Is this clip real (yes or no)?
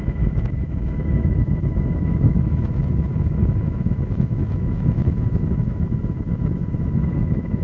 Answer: no